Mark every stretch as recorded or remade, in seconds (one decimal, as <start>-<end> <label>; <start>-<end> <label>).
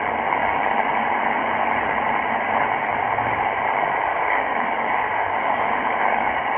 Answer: 0.0-4.1 recorded; 4.1-6.6 remade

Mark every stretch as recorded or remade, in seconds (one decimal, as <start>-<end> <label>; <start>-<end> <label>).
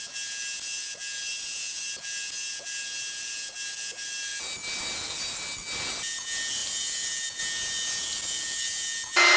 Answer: 0.0-9.4 recorded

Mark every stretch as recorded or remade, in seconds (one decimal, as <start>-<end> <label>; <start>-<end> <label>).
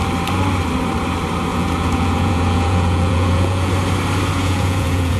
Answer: 0.0-1.5 recorded; 1.5-3.7 remade; 3.7-4.4 recorded; 4.4-5.2 remade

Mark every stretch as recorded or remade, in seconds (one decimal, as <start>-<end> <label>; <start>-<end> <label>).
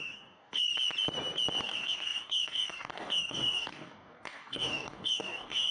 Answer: 0.0-0.7 remade; 0.7-1.6 recorded; 1.6-5.7 remade